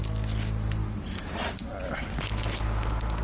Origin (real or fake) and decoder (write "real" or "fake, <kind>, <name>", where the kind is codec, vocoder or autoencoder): real